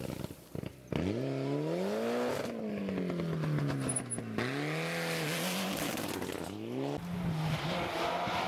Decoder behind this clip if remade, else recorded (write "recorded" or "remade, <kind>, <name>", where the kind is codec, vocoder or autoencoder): recorded